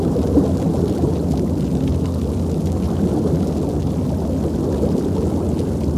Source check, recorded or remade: recorded